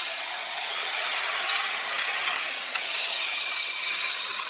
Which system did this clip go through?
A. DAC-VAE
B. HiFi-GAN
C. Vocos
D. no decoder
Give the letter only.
B